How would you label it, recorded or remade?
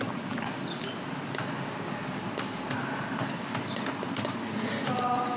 recorded